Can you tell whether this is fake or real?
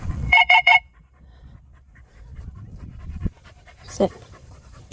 fake